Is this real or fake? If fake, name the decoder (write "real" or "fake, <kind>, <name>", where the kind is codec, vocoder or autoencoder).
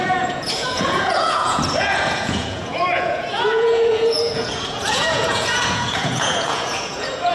fake, vocoder, Vocos